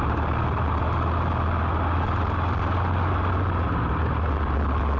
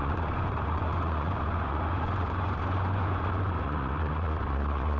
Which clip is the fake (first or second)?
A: second